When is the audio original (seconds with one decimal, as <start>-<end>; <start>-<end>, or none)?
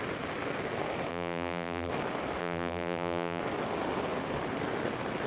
0.0-1.1; 1.9-2.4; 3.4-5.3